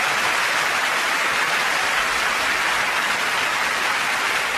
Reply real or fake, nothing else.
real